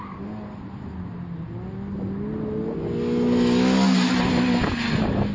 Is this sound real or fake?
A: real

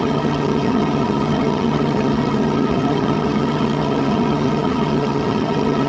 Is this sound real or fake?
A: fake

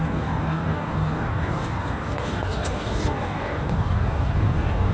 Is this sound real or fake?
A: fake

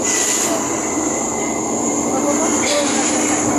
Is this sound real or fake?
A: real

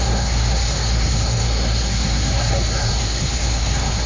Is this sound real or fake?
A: fake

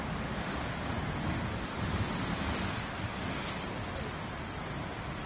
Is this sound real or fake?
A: real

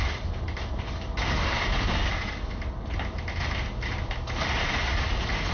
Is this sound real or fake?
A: real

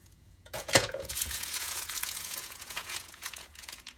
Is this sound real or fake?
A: fake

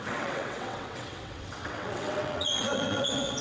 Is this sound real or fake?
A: fake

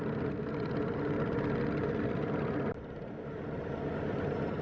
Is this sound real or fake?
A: real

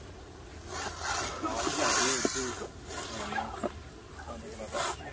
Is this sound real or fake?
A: real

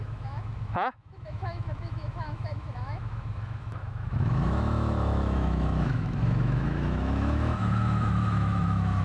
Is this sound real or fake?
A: fake